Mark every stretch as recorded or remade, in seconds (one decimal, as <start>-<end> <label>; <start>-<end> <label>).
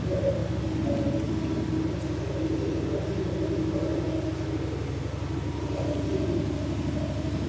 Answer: 0.0-7.5 recorded